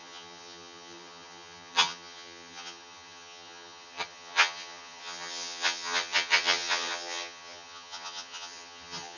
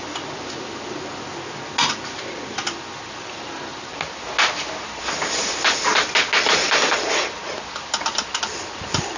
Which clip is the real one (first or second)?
second